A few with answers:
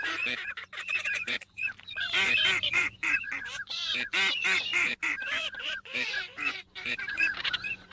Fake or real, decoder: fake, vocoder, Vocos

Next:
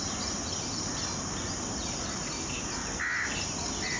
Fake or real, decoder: real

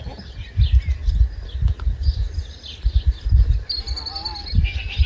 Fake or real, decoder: real